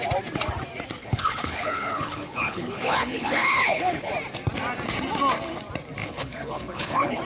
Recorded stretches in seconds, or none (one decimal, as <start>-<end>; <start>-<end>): 0.0-1.0; 4.1-6.0